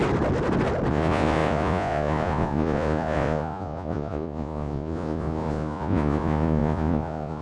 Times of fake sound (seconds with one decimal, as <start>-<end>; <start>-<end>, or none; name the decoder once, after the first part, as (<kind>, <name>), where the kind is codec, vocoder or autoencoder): 0.9-7.4 (vocoder, Vocos)